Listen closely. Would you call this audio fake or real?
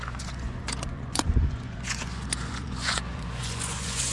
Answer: fake